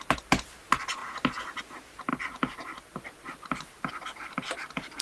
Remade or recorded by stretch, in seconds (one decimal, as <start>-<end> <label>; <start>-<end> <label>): 0.0-5.0 recorded